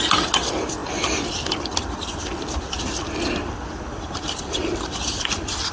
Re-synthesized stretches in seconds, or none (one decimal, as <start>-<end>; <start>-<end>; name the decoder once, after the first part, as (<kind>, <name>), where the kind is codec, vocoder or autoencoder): 3.9-5.7 (vocoder, BigVGAN v2)